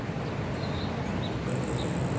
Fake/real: real